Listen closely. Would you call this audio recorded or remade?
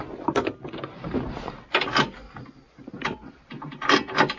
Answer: recorded